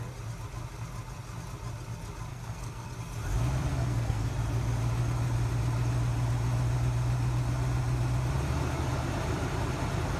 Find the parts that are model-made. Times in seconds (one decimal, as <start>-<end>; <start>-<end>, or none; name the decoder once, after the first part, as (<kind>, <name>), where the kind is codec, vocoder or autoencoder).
2.3-2.9 (codec, SNAC); 3.7-4.3